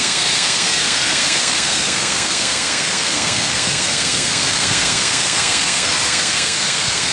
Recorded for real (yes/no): no